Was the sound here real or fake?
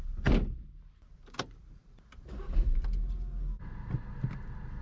real